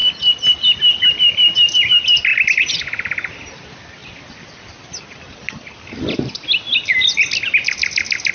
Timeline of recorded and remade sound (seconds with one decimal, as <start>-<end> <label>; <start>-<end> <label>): 0.0-8.3 recorded